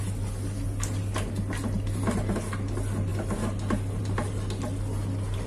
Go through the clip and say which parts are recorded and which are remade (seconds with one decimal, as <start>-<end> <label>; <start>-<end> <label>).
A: 0.0-5.5 recorded